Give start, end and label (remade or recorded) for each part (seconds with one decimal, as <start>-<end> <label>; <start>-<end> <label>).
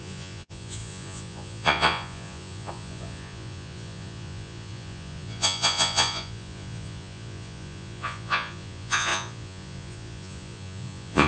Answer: 0.0-11.3 remade